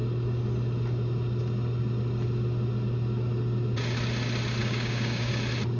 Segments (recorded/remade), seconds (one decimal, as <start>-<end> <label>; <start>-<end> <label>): 0.0-4.6 recorded; 4.6-5.3 remade; 5.3-5.8 recorded